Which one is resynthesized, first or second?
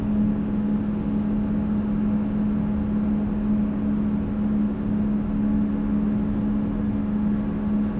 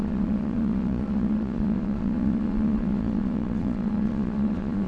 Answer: second